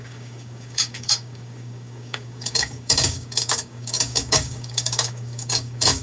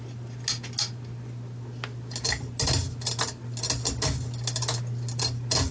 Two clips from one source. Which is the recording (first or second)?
second